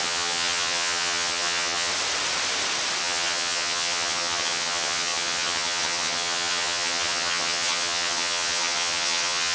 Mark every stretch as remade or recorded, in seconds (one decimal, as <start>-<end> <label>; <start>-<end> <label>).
0.0-1.9 remade; 1.9-3.0 recorded; 3.0-9.5 remade